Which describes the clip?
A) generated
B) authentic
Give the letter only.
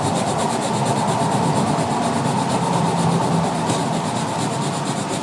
B